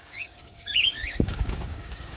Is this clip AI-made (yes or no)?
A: yes